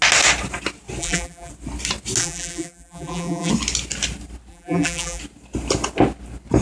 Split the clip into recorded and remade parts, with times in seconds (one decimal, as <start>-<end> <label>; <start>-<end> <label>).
0.0-1.0 recorded; 1.0-1.5 remade; 1.5-2.2 recorded; 2.2-3.5 remade; 3.5-4.5 recorded; 4.5-5.2 remade; 5.2-6.6 recorded